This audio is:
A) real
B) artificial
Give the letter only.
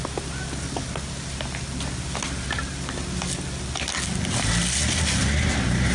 A